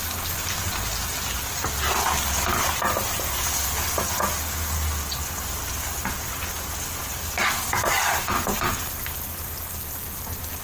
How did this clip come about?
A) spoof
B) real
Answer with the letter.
B